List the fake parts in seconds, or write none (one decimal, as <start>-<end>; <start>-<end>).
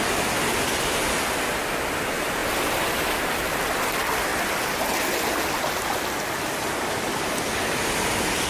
none